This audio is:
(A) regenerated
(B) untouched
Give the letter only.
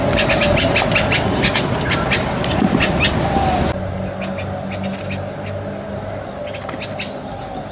B